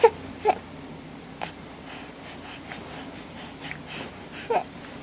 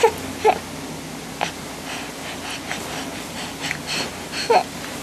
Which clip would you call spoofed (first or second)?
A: first